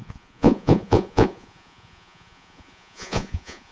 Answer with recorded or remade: remade